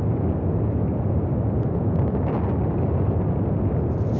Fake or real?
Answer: real